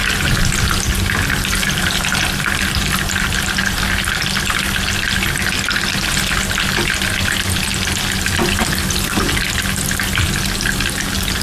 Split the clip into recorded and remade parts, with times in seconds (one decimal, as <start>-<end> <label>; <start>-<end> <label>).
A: 0.0-11.4 recorded